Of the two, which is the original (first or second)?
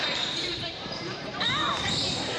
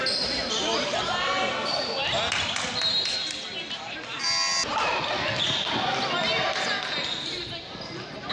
second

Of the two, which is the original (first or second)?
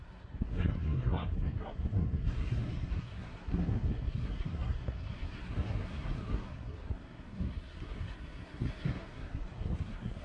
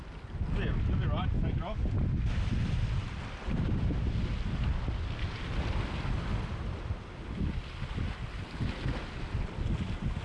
second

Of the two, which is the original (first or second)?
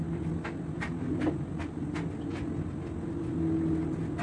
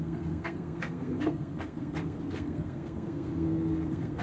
first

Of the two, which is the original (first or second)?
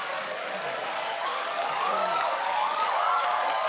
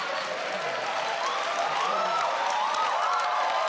second